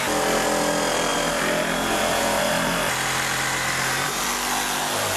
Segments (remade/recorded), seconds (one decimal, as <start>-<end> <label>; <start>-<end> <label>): 0.0-1.1 recorded; 1.1-4.2 remade; 4.2-5.2 recorded